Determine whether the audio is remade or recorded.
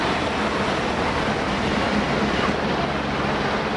recorded